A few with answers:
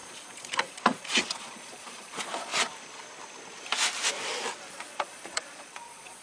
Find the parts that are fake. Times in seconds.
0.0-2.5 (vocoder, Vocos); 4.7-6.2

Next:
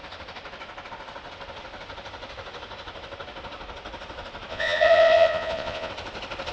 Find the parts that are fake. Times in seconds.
4.5-5.9 (vocoder, Vocos)